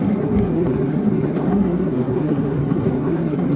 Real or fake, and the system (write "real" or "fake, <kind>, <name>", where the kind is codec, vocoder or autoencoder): fake, codec, SNAC